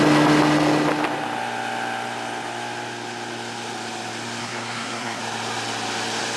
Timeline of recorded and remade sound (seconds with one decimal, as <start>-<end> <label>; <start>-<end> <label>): 0.0-4.4 recorded; 4.4-5.2 remade; 5.2-6.4 recorded